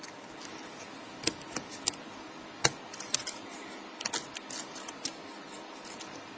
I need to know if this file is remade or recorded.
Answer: recorded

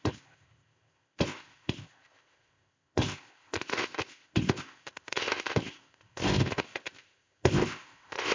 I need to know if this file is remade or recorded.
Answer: remade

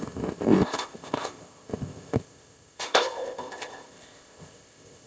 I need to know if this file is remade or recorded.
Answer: remade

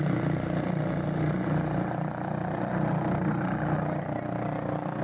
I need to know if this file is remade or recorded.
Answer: recorded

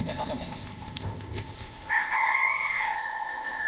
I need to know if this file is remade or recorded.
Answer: remade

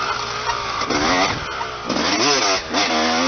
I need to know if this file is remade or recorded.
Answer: recorded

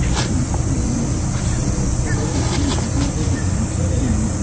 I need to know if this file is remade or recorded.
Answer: recorded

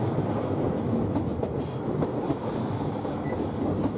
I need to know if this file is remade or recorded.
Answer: recorded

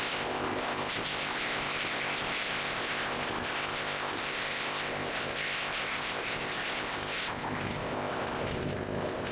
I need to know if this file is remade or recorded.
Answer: remade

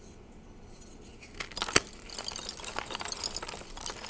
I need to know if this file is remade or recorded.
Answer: recorded